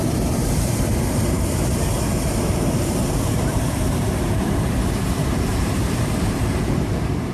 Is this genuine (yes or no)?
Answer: no